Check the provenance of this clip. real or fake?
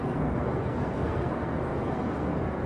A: fake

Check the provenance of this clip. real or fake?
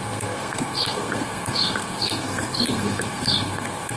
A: fake